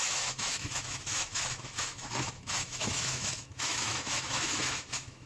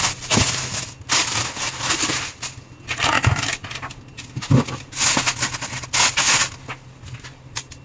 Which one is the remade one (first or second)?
first